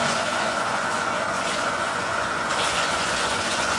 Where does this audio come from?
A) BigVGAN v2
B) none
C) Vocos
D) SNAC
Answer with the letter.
C